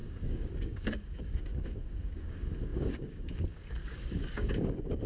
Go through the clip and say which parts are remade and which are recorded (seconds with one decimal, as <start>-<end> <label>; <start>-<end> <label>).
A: 0.0-5.1 remade